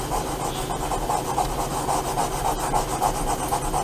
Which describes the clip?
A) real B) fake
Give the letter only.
A